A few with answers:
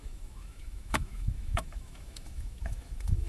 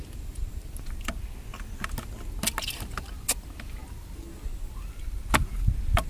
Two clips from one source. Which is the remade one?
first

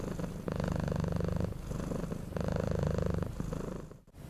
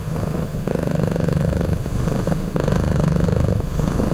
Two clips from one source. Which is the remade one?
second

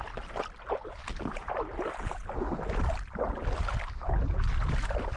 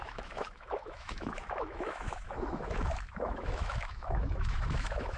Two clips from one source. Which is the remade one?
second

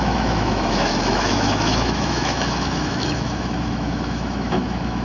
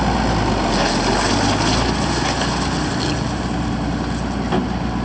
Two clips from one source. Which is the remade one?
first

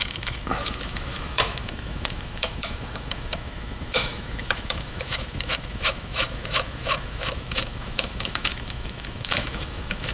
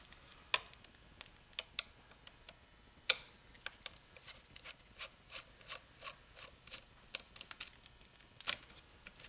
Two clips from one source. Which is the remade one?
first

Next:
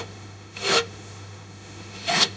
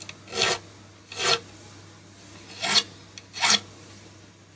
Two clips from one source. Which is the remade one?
first